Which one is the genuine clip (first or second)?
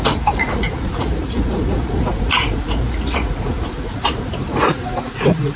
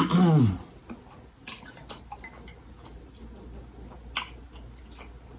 second